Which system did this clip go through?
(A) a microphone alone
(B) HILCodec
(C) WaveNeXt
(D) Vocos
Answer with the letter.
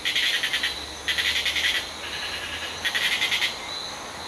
A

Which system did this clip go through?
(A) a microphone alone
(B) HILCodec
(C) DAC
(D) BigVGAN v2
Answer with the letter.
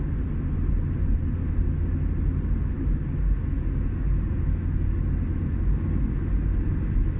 A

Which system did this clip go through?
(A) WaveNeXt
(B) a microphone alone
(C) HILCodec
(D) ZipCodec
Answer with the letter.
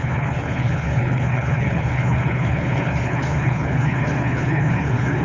C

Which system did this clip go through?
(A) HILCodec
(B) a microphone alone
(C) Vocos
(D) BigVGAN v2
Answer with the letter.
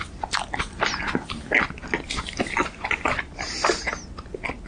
B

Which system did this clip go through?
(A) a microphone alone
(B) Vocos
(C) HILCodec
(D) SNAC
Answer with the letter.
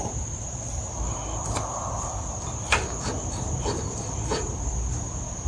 A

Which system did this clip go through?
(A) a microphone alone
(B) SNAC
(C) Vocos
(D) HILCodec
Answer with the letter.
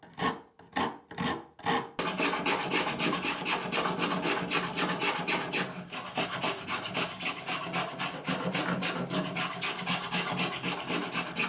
A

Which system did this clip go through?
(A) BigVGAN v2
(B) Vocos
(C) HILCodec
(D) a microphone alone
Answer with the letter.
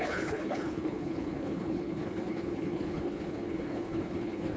C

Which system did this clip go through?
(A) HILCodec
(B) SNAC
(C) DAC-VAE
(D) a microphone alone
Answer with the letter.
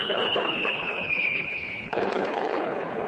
A